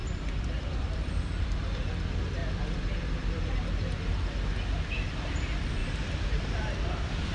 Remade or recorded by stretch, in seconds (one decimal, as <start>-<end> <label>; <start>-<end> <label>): 0.0-2.4 remade; 2.4-5.3 recorded; 5.3-5.8 remade; 5.8-6.3 recorded; 6.3-7.3 remade